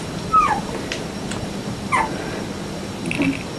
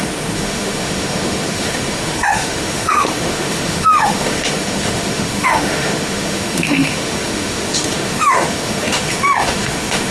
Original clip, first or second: first